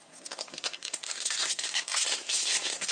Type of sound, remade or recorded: remade